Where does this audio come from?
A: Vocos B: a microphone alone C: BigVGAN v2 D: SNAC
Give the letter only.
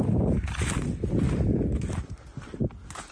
B